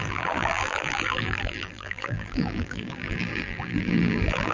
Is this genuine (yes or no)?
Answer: no